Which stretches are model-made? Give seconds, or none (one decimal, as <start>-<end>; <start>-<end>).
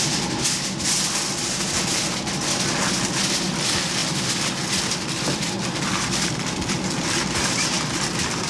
4.0-8.5